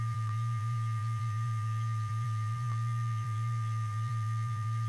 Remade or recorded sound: remade